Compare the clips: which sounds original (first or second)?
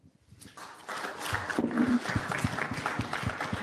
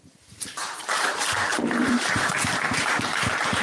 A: first